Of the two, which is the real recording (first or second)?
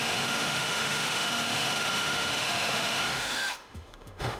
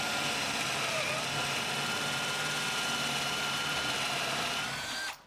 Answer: second